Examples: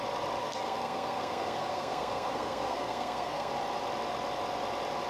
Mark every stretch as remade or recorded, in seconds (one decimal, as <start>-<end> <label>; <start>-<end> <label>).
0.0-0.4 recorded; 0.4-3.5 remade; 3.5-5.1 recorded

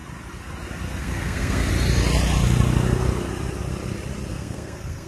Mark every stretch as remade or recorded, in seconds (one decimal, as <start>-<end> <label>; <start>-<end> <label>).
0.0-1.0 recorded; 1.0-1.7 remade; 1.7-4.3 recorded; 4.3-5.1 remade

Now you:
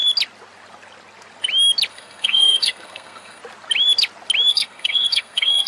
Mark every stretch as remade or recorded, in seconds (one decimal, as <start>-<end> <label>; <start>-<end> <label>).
0.0-1.9 recorded; 1.9-3.4 remade; 3.4-4.5 recorded; 4.5-5.7 remade

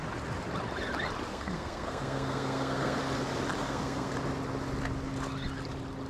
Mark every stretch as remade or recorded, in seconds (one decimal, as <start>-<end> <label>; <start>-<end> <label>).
0.0-1.3 recorded; 1.3-3.0 remade; 3.0-3.6 recorded; 3.6-4.1 remade; 4.1-6.1 recorded

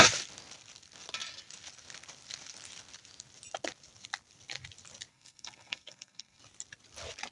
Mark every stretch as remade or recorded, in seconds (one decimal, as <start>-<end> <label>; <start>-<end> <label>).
0.0-5.1 recorded; 5.1-6.4 remade; 6.4-7.3 recorded